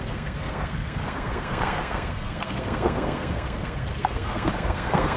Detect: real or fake fake